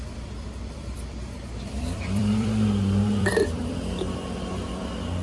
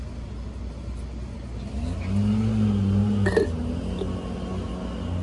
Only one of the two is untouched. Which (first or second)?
second